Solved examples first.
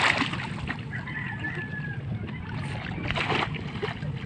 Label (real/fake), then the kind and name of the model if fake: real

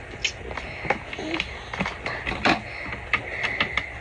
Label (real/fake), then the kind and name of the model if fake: real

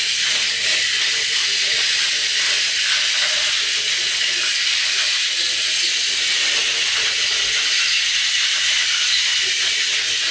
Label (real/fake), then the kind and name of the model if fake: real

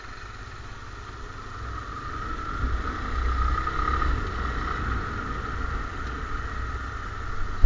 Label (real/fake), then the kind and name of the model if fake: real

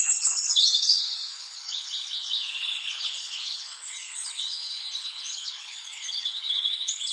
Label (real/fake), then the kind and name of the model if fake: fake, codec, HILCodec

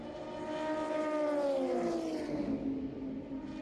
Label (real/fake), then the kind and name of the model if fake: real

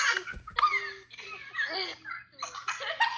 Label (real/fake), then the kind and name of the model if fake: real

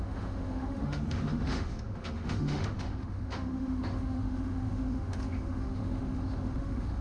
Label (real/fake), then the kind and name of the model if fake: fake, autoencoder, DAC-VAE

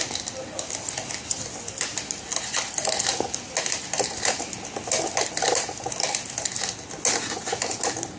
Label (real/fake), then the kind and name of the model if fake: real